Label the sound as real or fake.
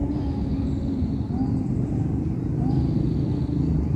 real